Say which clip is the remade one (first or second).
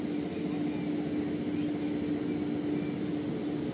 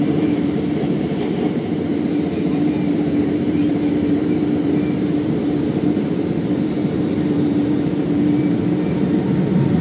second